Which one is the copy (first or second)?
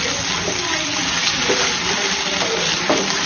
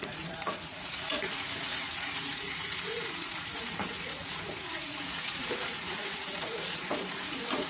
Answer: second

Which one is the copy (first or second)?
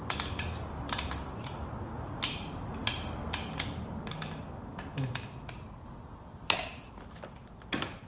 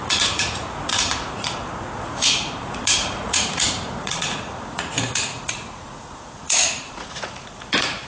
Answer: second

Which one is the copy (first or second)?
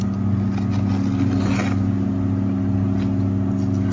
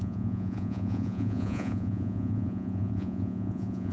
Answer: second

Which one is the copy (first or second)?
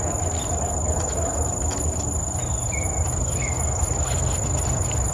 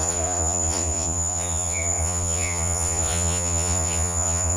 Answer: second